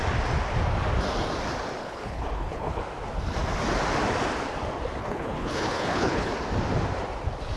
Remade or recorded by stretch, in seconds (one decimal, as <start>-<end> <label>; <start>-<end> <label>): 0.0-1.8 recorded; 1.8-2.8 remade; 2.8-5.0 recorded; 5.0-6.3 remade; 6.3-7.6 recorded